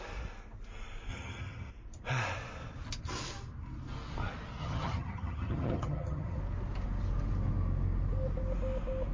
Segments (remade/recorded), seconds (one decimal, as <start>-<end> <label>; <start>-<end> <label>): 0.0-1.1 recorded; 1.1-1.7 remade; 1.7-4.6 recorded; 4.6-6.4 remade; 6.4-9.1 recorded